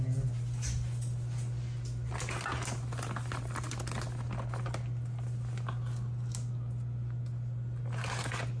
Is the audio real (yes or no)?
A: yes